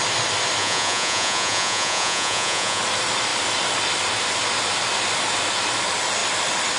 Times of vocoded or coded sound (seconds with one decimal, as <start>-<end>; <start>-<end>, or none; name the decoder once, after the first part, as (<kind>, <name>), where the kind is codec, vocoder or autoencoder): 0.6-2.8 (vocoder, Vocos)